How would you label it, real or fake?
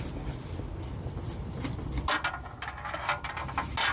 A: real